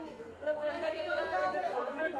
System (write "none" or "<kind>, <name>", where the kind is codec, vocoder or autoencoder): codec, SNAC